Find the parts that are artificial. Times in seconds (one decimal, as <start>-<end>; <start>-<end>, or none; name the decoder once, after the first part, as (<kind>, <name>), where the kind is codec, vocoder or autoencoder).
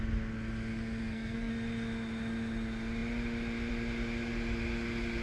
1.0-1.5 (codec, SNAC)